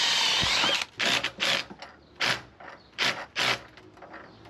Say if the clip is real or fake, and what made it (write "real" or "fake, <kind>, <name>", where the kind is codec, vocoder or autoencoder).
real